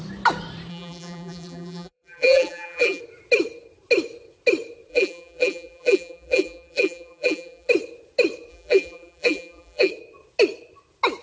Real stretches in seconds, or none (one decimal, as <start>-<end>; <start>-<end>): 0.0-0.7; 3.0-4.9; 7.7-8.5; 9.9-11.2